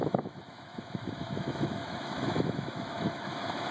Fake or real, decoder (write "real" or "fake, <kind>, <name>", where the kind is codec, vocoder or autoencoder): fake, autoencoder, DAC-VAE